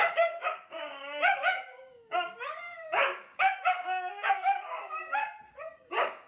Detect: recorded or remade remade